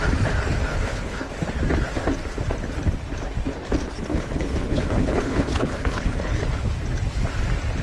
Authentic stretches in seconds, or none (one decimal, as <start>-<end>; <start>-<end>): 0.0-0.7; 1.3-4.1; 6.4-7.8